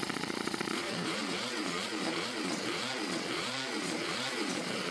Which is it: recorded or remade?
remade